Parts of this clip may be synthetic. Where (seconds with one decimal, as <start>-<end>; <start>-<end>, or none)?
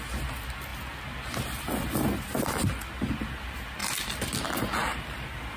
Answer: none